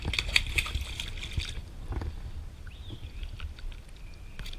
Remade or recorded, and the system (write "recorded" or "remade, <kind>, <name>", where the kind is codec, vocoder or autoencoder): recorded